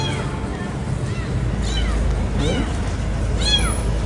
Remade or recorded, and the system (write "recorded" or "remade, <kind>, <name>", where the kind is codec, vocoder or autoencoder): recorded